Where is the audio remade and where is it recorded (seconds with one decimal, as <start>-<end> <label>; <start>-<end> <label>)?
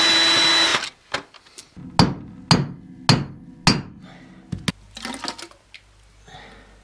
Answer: 0.0-6.8 recorded